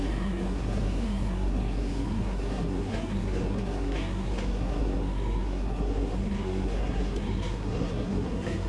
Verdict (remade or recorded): remade